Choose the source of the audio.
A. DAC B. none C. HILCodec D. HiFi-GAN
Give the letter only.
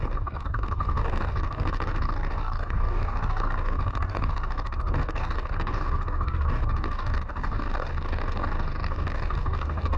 A